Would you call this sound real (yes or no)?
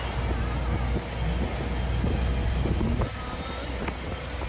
yes